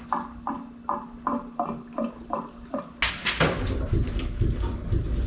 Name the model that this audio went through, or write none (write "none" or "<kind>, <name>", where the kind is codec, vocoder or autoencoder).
none